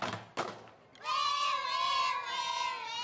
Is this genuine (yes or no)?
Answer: yes